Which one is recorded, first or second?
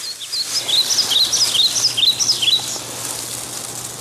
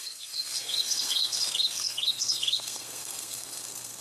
first